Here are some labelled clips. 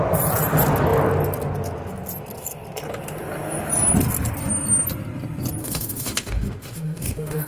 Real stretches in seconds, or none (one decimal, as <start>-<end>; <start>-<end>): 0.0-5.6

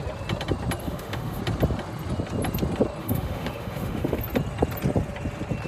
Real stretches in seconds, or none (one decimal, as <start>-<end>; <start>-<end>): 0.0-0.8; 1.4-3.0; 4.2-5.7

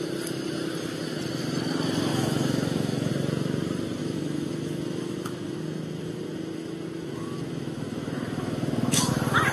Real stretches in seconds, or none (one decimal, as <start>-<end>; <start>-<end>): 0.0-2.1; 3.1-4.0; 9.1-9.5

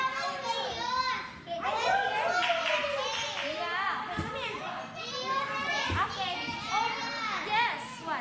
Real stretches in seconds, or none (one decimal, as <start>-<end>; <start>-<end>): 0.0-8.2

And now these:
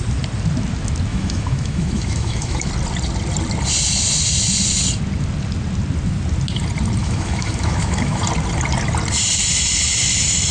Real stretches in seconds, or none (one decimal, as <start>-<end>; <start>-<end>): 0.0-1.1; 2.7-7.0; 8.2-10.5

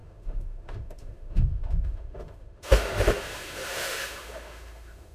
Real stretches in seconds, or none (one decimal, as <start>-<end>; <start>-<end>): none

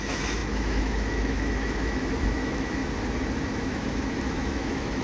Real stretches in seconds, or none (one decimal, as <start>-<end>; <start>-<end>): 2.8-3.5

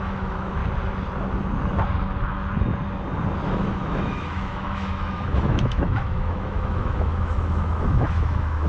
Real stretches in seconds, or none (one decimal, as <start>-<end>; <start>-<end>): 0.6-3.5